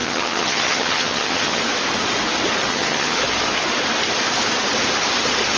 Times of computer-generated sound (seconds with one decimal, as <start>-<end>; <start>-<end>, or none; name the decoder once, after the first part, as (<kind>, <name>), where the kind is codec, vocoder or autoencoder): 0.0-1.6 (vocoder, HiFi-GAN); 2.7-3.2